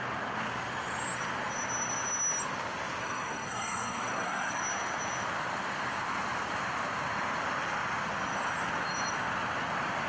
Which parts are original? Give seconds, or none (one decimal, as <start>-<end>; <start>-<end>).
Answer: 0.0-3.0; 4.6-10.1